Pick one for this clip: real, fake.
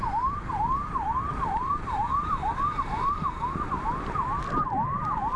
fake